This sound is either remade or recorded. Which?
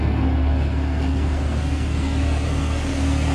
remade